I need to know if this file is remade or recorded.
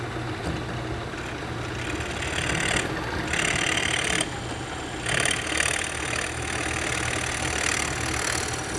recorded